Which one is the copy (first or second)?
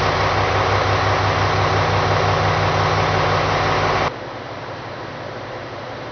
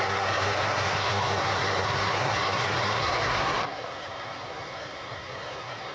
second